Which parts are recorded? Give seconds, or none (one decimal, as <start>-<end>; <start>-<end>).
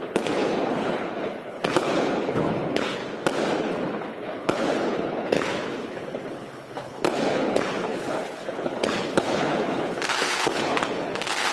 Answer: 3.0-3.6